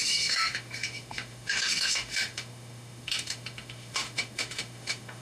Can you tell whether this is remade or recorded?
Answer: remade